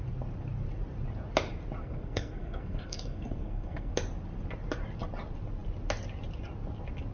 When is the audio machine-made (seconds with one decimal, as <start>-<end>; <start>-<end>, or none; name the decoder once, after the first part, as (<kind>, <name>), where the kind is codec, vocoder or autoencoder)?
1.8-3.9 (codec, SNAC)

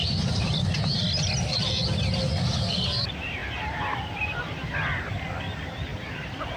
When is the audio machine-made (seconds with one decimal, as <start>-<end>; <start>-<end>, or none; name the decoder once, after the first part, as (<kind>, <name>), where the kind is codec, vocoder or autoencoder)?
0.0-1.3 (vocoder, BigVGAN v2)

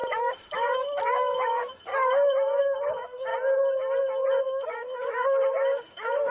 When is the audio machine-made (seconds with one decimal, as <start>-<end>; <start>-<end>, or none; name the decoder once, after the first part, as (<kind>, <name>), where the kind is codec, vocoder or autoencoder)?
0.0-1.9 (autoencoder, DAC-VAE); 2.6-3.3; 4.4-6.3

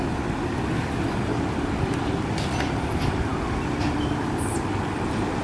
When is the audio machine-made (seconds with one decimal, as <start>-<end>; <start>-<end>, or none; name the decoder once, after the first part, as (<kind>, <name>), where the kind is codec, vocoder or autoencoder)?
none

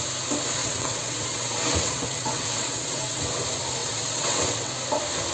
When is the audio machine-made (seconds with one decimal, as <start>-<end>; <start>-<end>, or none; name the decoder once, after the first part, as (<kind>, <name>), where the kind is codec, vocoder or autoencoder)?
0.6-3.4 (vocoder, WaveNeXt); 3.8-4.7

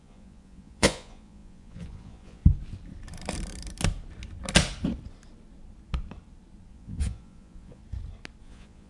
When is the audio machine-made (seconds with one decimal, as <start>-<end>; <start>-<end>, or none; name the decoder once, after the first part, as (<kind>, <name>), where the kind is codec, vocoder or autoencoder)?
0.0-2.4 (vocoder, Vocos); 6.7-7.8; 8.4-8.9